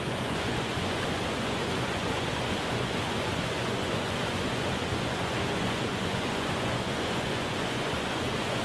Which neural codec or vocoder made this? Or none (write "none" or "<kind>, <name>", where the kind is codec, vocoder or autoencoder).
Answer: vocoder, Vocos